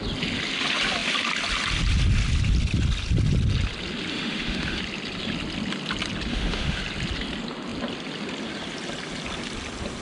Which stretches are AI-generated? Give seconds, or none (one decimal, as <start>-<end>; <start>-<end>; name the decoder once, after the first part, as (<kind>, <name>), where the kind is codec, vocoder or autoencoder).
4.1-4.8 (autoencoder, DAC-VAE); 6.3-6.8